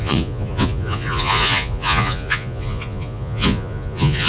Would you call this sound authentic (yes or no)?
no